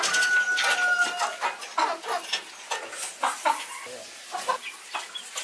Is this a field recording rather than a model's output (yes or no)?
yes